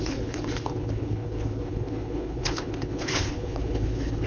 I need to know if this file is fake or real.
fake